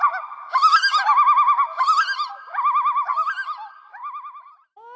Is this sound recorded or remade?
recorded